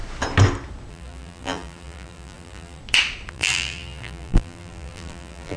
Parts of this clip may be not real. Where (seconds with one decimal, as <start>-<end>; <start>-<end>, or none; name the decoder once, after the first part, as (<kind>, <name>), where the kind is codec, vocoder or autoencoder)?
0.9-2.8 (vocoder, BigVGAN v2); 3.3-5.6